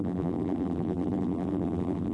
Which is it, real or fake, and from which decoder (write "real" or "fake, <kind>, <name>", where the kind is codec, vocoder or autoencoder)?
fake, vocoder, BigVGAN v2